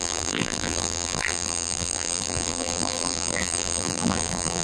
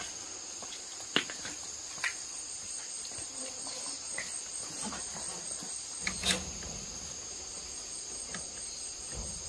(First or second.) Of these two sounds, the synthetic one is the first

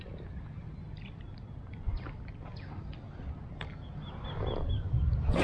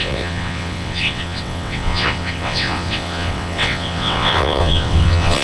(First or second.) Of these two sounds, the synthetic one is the second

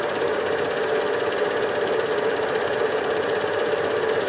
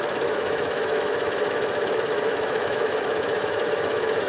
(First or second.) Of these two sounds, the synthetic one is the second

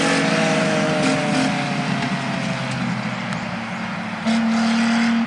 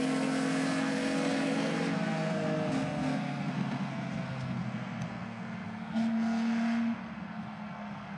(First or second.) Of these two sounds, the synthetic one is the second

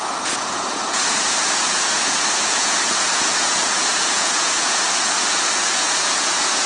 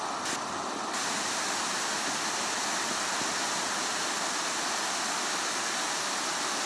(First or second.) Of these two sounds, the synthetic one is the first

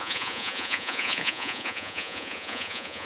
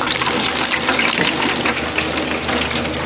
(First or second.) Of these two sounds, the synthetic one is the first